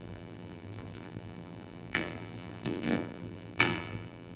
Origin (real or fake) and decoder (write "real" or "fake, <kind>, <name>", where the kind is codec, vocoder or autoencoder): fake, vocoder, BigVGAN v2